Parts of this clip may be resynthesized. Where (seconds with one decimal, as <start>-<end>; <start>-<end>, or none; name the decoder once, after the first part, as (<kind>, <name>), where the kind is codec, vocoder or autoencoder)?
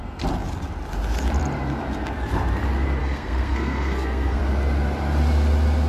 3.0-4.4 (codec, SNAC)